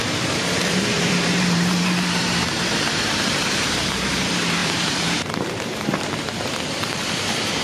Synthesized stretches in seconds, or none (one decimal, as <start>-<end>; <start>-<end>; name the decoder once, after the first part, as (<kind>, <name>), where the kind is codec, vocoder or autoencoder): 0.0-7.6 (vocoder, BigVGAN v2)